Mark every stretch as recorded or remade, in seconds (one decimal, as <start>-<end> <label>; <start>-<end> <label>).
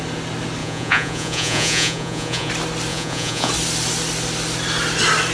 0.0-0.6 recorded; 0.6-2.5 remade; 2.5-2.9 recorded; 2.9-3.5 remade; 3.5-5.3 recorded